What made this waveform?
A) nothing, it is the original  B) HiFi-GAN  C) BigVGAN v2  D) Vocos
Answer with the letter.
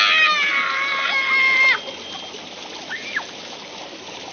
A